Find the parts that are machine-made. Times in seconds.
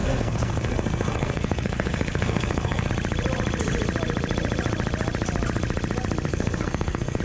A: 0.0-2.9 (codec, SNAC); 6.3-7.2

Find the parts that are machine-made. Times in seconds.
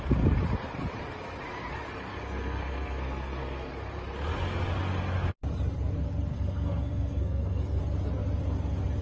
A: 2.1-3.7 (codec, SNAC); 6.3-7.8